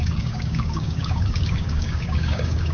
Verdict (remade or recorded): remade